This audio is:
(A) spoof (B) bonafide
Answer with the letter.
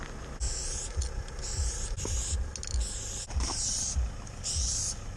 B